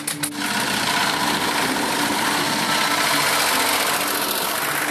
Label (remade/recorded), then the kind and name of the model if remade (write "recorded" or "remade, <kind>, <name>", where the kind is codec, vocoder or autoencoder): recorded